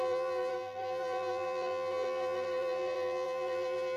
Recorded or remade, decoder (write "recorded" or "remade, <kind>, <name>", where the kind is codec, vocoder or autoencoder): remade, vocoder, BigVGAN v2